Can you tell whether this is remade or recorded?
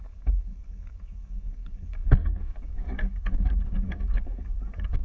remade